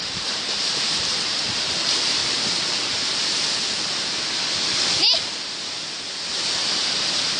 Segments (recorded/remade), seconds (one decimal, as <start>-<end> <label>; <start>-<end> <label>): 0.0-2.2 remade; 2.2-6.6 recorded; 6.6-7.4 remade